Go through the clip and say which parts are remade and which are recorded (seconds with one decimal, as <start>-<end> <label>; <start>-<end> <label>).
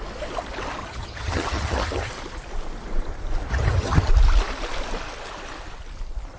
0.0-0.8 recorded; 0.8-2.1 remade; 2.1-3.5 recorded; 3.5-4.1 remade; 4.1-6.4 recorded